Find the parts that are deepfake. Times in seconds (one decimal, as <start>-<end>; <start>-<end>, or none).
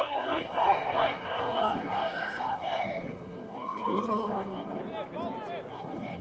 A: 0.0-4.8; 5.7-6.2